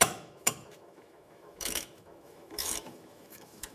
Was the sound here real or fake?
fake